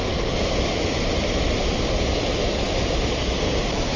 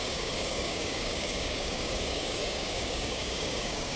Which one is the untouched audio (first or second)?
first